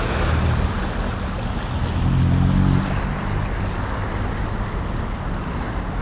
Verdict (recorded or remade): recorded